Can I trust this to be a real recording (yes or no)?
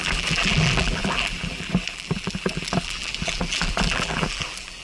no